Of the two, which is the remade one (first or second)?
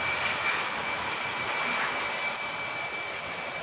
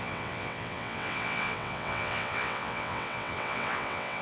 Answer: second